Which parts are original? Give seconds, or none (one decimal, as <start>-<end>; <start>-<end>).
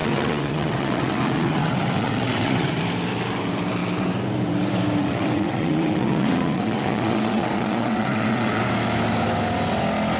2.8-5.0; 8.6-10.2